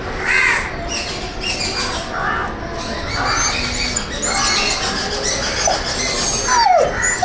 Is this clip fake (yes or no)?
no